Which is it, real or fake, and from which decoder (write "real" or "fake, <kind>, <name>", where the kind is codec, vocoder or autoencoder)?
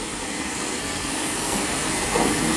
fake, codec, SNAC